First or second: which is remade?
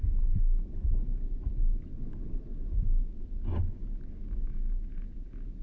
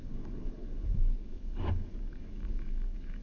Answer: second